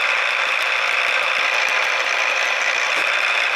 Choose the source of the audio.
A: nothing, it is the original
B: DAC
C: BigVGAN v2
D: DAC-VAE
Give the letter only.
A